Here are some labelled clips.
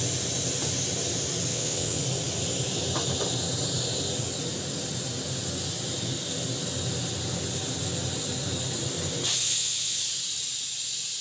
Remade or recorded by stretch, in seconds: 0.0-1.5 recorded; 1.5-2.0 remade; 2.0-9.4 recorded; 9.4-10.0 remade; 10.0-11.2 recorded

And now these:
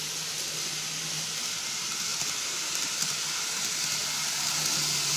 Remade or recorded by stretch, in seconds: 0.0-5.2 recorded

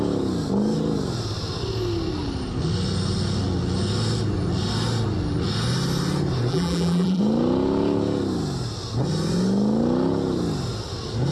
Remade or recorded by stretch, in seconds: 0.0-6.5 recorded; 6.5-7.2 remade; 7.2-11.3 recorded

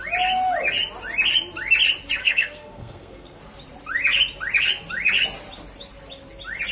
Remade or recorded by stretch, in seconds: 0.0-2.2 recorded; 2.2-3.4 remade; 3.4-6.7 recorded

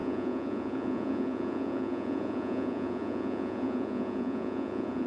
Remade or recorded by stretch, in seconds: 0.0-5.1 remade